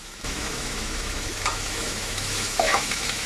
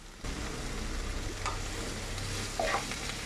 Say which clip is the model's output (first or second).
first